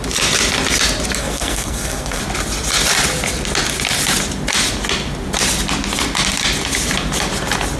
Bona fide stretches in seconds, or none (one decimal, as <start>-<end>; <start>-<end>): 0.0-1.2; 2.2-7.8